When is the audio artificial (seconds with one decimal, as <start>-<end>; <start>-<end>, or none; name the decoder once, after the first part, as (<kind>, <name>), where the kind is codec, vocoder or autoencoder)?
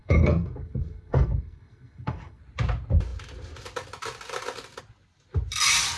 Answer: 0.0-2.4 (codec, SNAC)